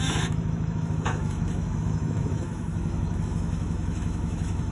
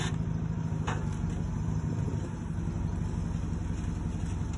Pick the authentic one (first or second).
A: second